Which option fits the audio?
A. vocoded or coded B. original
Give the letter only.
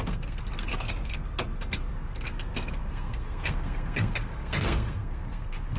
A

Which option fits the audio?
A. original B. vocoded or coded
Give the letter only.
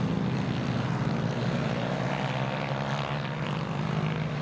A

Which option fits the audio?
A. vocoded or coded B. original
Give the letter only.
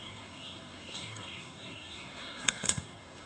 A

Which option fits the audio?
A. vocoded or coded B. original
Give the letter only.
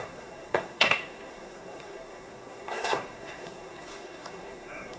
A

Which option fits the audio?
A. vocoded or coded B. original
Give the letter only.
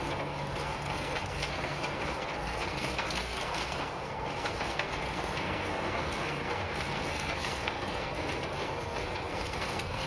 A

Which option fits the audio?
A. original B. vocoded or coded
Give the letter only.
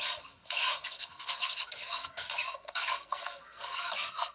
B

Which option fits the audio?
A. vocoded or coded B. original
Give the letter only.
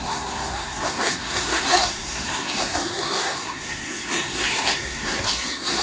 A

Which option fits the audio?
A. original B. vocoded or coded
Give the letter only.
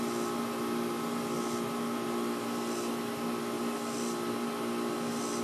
A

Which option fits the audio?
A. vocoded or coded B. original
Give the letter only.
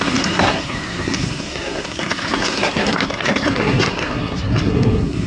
A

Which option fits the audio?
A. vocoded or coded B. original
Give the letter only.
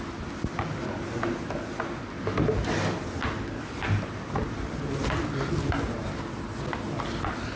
B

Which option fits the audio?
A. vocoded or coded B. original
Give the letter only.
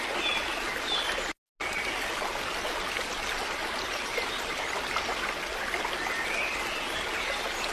B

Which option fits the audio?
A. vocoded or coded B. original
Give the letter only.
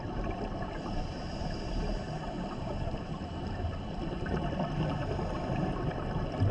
B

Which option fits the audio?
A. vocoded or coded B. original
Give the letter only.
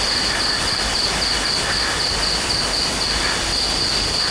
B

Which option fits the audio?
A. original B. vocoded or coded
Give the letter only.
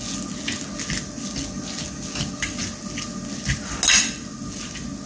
A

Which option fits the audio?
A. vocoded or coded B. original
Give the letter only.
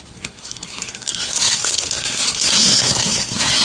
A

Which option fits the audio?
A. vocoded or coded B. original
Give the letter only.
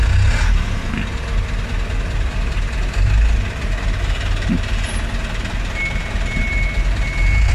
B